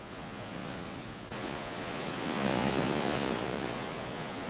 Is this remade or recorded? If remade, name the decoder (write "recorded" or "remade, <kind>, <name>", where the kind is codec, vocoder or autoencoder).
remade, vocoder, Vocos